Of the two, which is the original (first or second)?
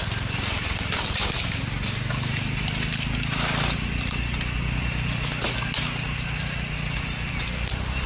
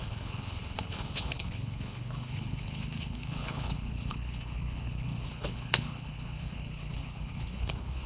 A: first